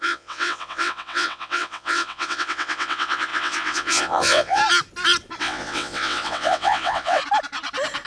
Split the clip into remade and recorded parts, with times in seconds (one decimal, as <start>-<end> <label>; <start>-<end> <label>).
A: 0.0-4.6 remade; 4.6-5.4 recorded; 5.4-7.2 remade; 7.2-8.1 recorded

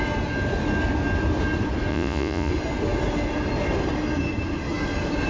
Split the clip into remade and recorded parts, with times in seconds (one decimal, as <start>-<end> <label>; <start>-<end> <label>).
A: 0.0-1.9 recorded; 1.9-2.5 remade; 2.5-5.3 recorded

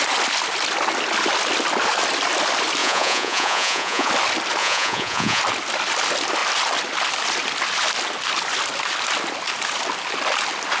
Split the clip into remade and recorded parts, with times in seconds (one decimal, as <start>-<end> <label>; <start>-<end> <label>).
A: 0.0-2.8 recorded; 2.8-4.1 remade; 4.1-4.6 recorded; 4.6-5.4 remade; 5.4-10.8 recorded

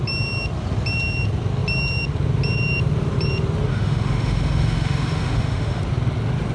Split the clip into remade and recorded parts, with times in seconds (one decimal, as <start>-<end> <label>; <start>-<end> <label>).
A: 0.0-3.7 recorded; 3.7-5.8 remade; 5.8-6.5 recorded

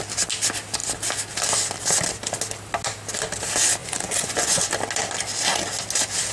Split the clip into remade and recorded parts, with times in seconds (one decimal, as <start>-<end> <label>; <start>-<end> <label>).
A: 0.0-3.8 recorded; 3.8-4.7 remade; 4.7-6.3 recorded

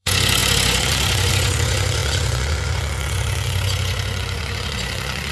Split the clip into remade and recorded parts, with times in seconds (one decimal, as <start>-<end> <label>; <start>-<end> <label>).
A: 0.0-5.3 remade